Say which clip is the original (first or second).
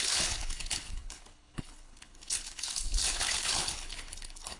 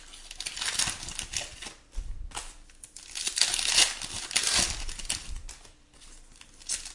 second